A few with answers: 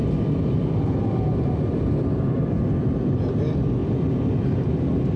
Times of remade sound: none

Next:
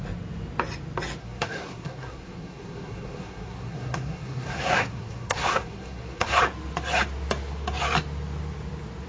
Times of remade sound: 1.2-6.4 (codec, SNAC)

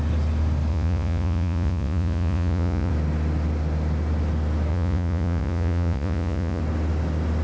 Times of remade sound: 0.7-2.9 (vocoder, Vocos); 4.7-6.6

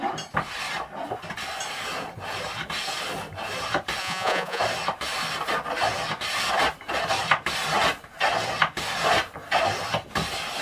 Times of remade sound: 4.0-4.6 (vocoder, Vocos)

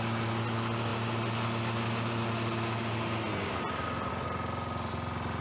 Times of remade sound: none